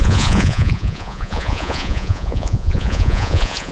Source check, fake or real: fake